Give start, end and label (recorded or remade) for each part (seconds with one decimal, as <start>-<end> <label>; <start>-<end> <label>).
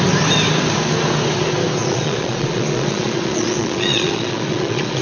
0.0-1.8 recorded; 1.8-5.0 remade